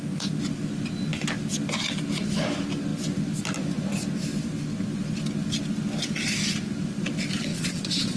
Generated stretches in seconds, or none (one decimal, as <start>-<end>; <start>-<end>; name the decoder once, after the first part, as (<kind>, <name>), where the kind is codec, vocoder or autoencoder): 7.5-8.2 (vocoder, Vocos)